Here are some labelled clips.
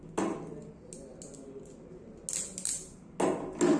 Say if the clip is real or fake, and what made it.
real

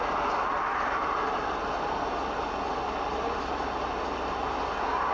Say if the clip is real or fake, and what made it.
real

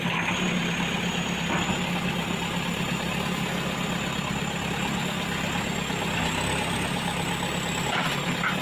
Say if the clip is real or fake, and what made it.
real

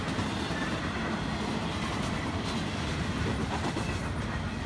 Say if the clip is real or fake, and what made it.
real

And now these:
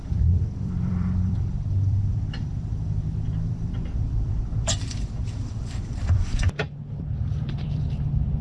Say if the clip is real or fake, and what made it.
fake, vocoder, BigVGAN v2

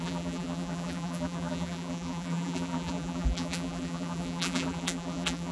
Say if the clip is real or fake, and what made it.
fake, vocoder, BigVGAN v2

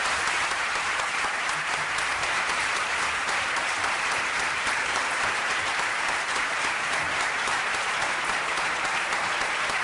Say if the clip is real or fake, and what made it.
fake, vocoder, BigVGAN v2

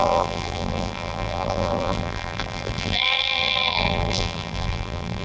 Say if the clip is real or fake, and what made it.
fake, vocoder, BigVGAN v2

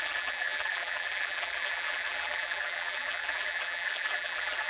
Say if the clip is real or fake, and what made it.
fake, vocoder, BigVGAN v2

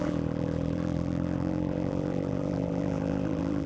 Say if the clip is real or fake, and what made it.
fake, vocoder, BigVGAN v2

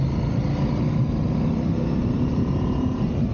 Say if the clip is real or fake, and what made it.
real